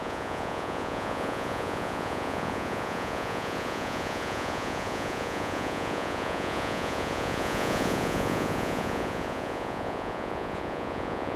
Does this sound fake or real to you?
fake